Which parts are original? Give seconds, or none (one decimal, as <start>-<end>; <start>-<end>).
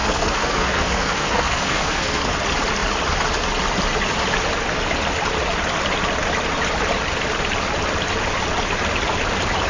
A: 2.2-9.7